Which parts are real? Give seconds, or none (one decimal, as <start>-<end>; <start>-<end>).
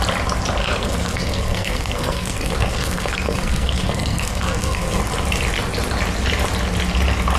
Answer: 0.0-0.6; 5.0-7.4